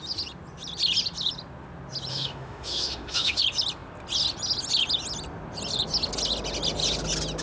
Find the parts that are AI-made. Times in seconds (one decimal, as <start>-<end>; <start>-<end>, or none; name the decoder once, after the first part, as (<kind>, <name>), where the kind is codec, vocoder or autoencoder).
2.1-3.4 (autoencoder, DAC-VAE)